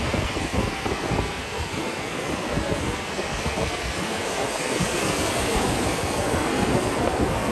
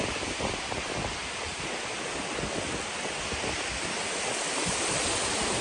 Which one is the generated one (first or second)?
first